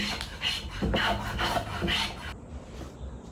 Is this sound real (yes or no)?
yes